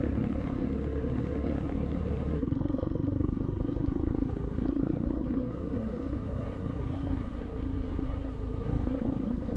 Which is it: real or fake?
fake